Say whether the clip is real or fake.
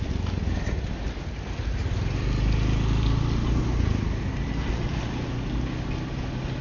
real